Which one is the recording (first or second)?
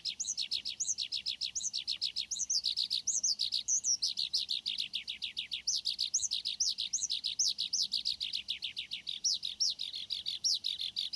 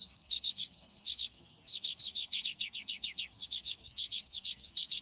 first